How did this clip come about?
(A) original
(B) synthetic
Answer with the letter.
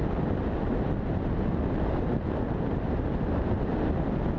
A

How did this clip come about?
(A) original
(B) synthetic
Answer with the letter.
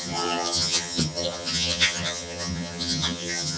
B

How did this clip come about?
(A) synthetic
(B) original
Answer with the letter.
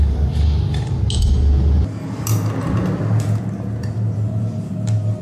B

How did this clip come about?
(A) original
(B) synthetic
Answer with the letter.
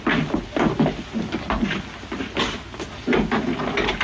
A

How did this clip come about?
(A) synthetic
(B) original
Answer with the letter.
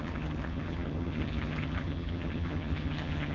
A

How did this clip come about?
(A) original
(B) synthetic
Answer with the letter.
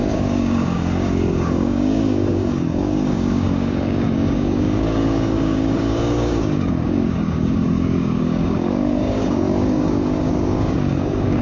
B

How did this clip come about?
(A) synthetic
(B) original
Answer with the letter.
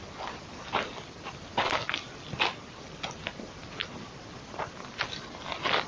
B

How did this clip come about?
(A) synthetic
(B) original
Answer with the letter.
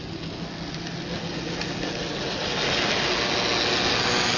B